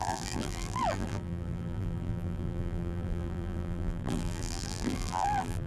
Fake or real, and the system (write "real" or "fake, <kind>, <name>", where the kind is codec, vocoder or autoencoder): fake, vocoder, BigVGAN v2